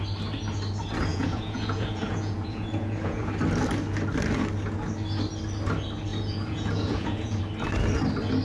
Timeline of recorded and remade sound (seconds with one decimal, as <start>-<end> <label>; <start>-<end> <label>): 0.0-1.1 recorded; 1.1-3.3 remade; 3.3-6.1 recorded; 6.1-7.4 remade; 7.4-8.4 recorded